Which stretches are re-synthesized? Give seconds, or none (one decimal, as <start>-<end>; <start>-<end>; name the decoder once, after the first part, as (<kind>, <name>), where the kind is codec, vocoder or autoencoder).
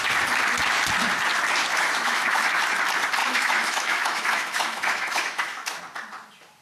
1.7-2.6 (autoencoder, DAC-VAE); 3.2-5.8